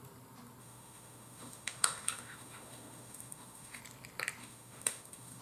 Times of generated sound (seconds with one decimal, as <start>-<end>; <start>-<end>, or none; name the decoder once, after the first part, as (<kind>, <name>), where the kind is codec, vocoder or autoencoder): 0.6-3.8 (autoencoder, DAC-VAE); 4.4-5.4